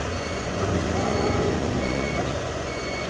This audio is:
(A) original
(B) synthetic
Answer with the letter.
B